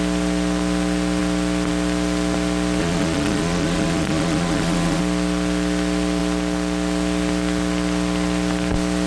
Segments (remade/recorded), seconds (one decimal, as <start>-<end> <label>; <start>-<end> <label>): 0.0-2.8 recorded; 2.8-5.0 remade; 5.0-9.1 recorded